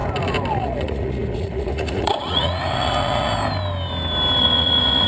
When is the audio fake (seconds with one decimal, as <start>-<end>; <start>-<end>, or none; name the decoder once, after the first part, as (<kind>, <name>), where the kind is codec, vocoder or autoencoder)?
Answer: 0.5-3.3 (vocoder, Vocos); 4.4-5.1